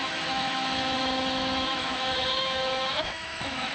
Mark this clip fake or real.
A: fake